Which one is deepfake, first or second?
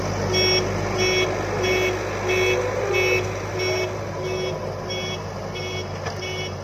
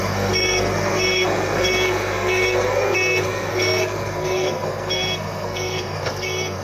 second